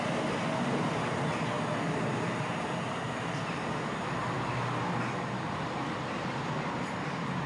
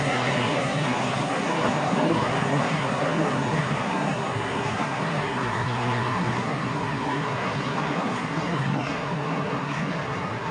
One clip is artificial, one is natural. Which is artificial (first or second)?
second